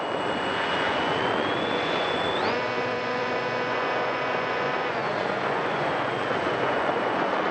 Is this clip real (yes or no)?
no